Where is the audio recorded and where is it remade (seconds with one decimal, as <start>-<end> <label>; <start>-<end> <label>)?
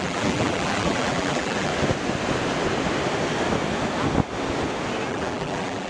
0.0-1.7 remade; 1.7-5.1 recorded; 5.1-5.9 remade